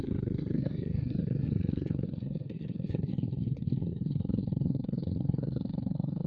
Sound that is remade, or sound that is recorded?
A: remade